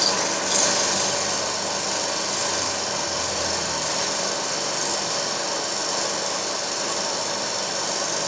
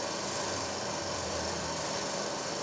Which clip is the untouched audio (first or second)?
first